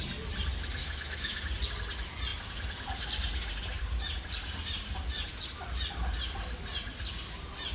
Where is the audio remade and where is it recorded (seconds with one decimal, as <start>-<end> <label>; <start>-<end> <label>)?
0.0-0.8 recorded; 0.8-1.4 remade; 1.4-7.7 recorded